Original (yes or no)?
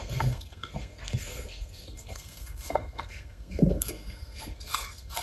no